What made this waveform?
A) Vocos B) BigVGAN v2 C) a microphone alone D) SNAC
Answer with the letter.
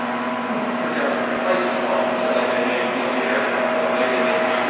C